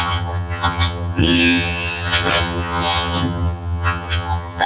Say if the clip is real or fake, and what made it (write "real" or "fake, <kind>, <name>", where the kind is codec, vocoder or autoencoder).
fake, vocoder, HiFi-GAN